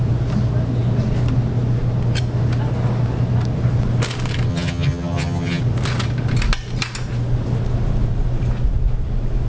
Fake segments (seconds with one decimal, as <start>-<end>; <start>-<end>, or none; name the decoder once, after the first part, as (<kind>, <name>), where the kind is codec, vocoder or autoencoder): 4.5-5.6 (vocoder, HiFi-GAN)